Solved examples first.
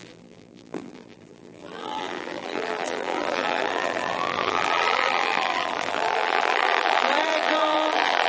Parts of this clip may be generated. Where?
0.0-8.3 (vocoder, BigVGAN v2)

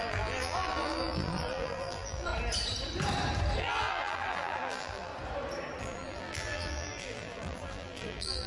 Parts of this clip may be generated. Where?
0.0-2.3 (vocoder, BigVGAN v2); 3.6-5.1; 5.8-8.5

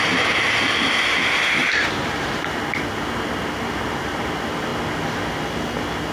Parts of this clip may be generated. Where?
1.6-2.6 (vocoder, BigVGAN v2)

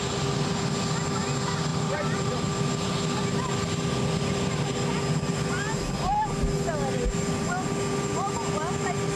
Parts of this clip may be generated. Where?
1.7-2.4 (vocoder, BigVGAN v2)

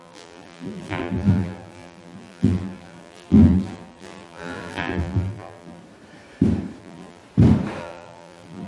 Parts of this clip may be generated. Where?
0.0-5.8 (vocoder, BigVGAN v2); 6.8-7.2; 7.8-8.7

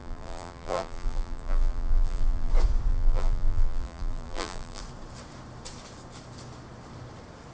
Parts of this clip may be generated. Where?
0.0-2.5 (vocoder, BigVGAN v2); 2.9-4.8

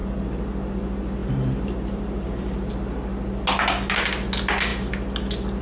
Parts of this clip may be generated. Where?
1.2-2.7 (vocoder, BigVGAN v2)

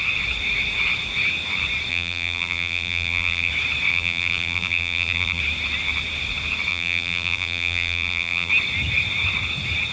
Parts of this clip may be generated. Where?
1.9-3.5 (vocoder, BigVGAN v2); 3.9-5.4; 6.7-8.5